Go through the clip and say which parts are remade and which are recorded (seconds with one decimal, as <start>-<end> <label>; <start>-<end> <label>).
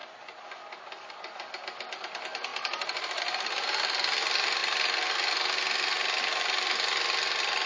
0.0-7.7 recorded